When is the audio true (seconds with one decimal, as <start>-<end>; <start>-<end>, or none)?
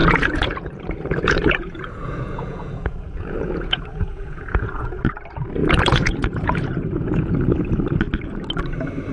5.0-5.6; 7.3-9.1